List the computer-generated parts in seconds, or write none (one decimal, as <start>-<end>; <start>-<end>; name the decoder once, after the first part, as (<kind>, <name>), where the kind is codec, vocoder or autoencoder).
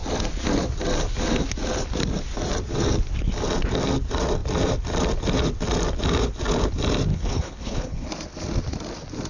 7.1-8.1 (codec, HILCodec)